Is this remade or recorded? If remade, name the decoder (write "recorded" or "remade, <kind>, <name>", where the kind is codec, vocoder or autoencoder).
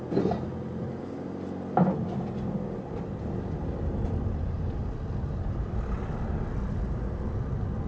recorded